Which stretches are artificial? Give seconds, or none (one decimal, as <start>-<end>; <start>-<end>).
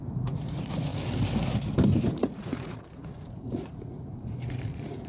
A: 0.0-0.9; 2.1-5.1